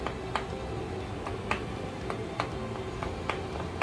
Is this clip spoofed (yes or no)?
no